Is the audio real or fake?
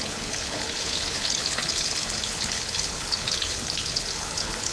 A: fake